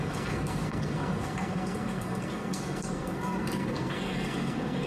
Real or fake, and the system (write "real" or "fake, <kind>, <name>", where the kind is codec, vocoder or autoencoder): fake, codec, SNAC